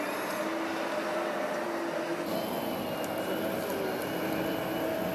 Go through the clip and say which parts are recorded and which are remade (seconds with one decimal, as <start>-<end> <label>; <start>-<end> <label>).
0.0-5.1 recorded